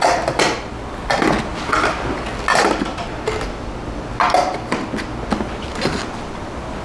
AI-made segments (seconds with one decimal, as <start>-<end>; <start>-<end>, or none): none